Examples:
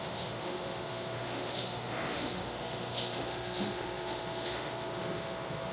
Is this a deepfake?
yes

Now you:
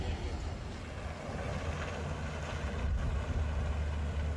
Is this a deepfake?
no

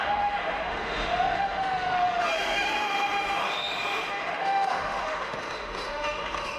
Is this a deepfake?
yes